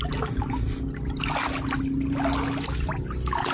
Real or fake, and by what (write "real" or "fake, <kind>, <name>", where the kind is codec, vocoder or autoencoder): real